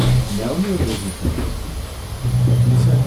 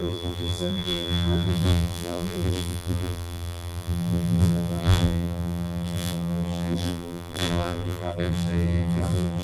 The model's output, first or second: second